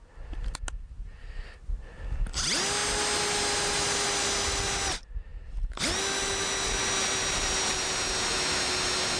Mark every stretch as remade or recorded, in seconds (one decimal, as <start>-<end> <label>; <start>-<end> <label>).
0.0-9.2 recorded